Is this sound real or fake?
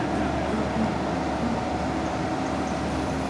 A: real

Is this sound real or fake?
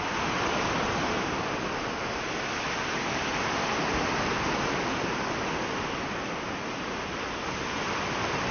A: real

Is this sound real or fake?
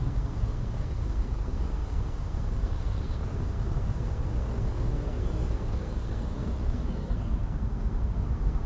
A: fake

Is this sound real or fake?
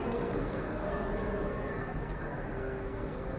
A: fake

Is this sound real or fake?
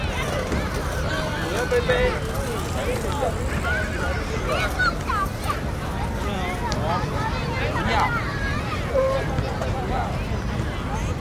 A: real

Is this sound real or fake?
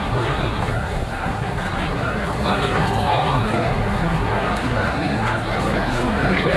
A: fake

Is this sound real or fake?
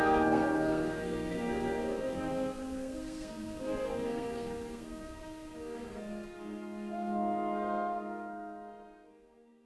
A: fake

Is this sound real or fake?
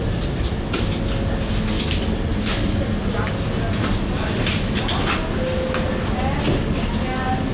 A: real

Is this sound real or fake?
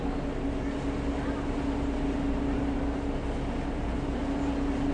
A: real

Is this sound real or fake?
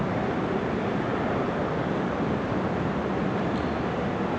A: real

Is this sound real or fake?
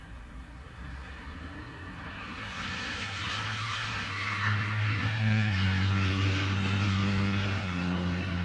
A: fake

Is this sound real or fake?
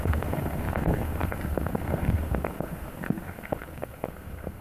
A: fake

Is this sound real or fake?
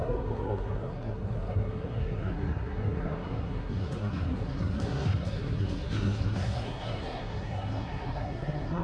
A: fake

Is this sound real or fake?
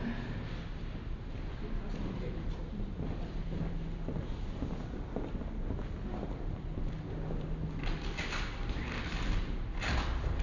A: real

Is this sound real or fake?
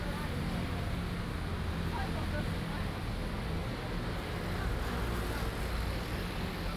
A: real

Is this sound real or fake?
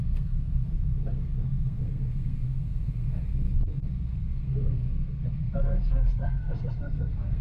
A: fake